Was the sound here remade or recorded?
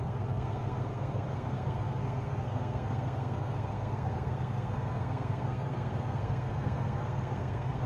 remade